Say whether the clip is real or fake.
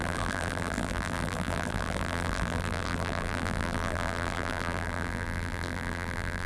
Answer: fake